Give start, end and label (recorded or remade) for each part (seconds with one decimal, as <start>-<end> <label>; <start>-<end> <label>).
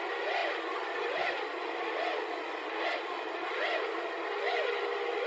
0.0-5.3 recorded